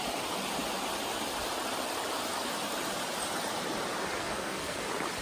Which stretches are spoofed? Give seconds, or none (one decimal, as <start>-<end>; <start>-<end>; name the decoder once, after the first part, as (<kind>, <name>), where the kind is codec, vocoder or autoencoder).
4.2-4.8 (codec, SNAC)